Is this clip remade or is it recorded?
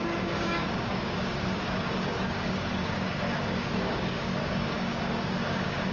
remade